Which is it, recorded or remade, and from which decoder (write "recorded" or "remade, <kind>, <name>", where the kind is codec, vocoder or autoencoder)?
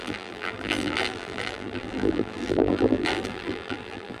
remade, vocoder, BigVGAN v2